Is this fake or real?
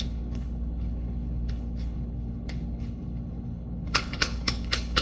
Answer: fake